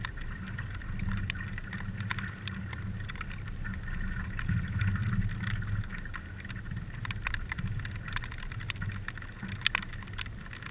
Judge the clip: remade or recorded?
recorded